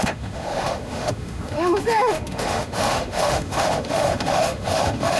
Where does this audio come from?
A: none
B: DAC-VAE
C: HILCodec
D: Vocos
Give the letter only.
B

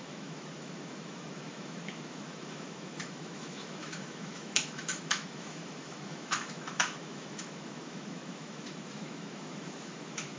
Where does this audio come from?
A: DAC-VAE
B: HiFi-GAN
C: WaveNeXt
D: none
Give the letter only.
A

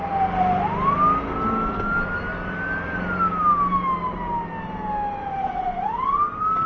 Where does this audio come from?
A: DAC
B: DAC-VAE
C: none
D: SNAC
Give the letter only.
C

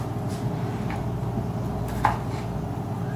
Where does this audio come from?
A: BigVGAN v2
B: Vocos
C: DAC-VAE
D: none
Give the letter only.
D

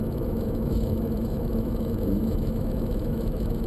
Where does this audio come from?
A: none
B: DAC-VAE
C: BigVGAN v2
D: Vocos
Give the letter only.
B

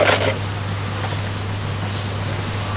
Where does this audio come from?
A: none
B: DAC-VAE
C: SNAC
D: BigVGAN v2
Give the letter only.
A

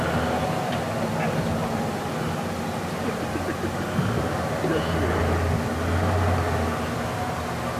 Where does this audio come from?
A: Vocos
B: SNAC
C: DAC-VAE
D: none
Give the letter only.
D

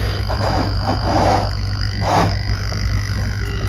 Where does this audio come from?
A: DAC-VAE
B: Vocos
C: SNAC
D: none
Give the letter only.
A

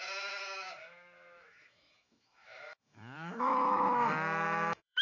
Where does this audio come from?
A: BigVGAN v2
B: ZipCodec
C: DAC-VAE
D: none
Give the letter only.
C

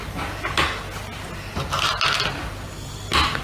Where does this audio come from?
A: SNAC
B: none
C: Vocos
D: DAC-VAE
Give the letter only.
B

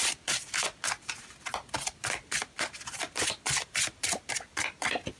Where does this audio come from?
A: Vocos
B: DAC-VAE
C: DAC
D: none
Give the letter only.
D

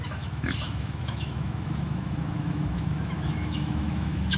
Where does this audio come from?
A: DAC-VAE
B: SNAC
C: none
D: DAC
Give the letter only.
A